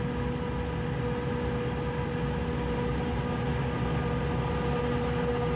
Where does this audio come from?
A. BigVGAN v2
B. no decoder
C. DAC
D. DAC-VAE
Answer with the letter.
B